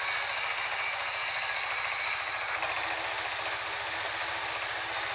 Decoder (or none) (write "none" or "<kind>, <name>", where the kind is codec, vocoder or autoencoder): none